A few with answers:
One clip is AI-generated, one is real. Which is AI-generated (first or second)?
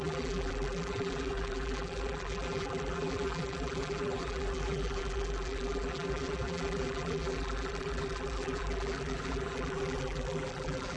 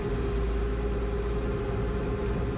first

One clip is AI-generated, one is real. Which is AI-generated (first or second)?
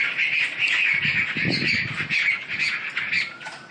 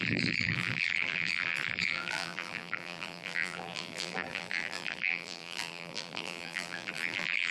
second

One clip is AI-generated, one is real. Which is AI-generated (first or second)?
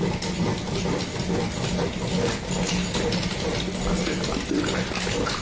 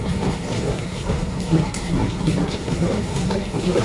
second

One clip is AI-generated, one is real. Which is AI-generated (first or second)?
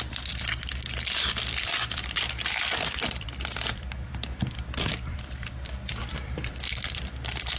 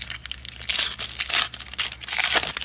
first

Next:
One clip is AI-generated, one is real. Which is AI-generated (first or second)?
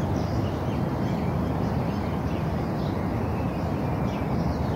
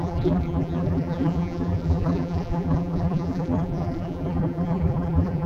second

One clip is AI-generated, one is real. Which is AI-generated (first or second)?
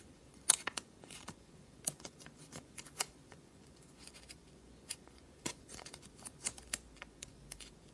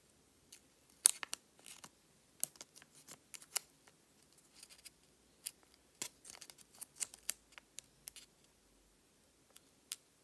first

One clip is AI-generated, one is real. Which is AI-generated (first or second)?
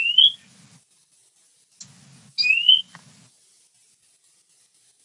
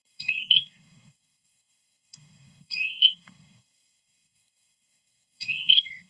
second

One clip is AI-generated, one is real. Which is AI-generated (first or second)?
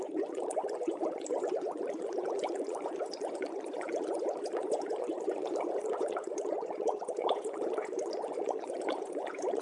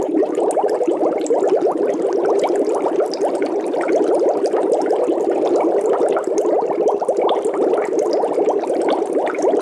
first